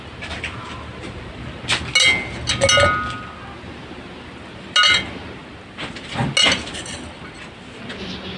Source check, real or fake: real